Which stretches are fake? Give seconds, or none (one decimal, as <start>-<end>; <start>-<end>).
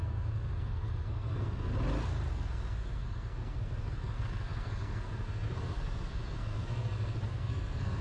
0.0-1.7; 2.3-8.0